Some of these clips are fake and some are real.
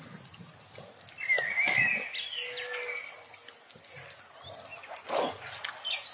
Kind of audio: real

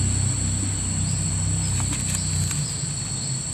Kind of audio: real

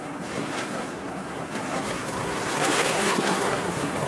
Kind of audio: fake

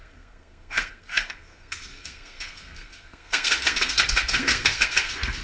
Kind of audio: fake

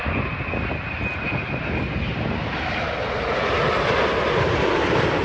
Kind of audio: real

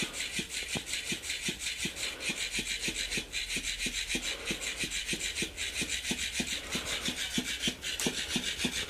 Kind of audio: real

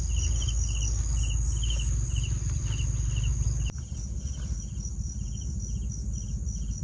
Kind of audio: real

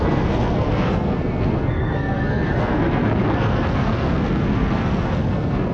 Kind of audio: fake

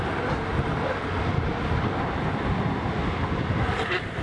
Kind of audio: real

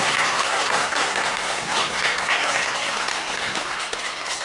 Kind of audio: fake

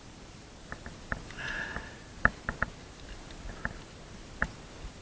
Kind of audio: real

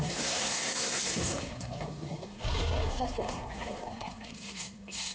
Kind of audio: fake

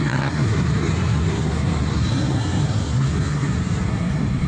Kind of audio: fake